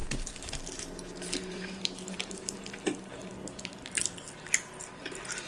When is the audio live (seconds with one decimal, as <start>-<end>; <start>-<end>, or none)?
3.2-4.9